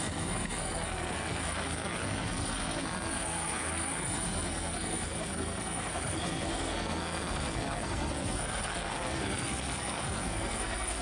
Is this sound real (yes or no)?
no